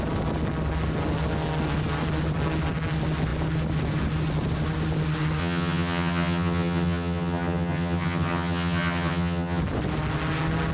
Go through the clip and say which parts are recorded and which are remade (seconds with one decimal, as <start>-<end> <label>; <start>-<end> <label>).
0.0-5.4 recorded; 5.4-9.6 remade; 9.6-10.7 recorded